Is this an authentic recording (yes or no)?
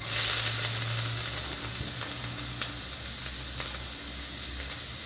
yes